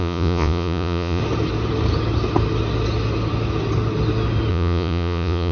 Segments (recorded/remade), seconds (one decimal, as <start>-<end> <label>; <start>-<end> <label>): 0.0-1.2 remade; 1.2-4.5 recorded; 4.5-5.5 remade